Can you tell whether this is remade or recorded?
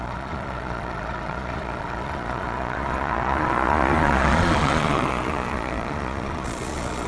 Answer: remade